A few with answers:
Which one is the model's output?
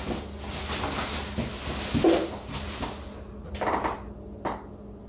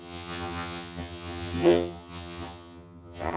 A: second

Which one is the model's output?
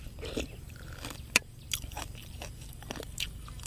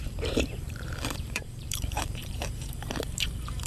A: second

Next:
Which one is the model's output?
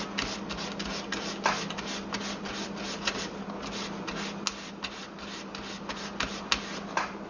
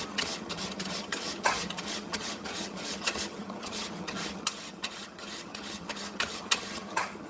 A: second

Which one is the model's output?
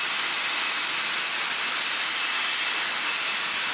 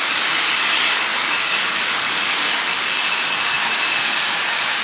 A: second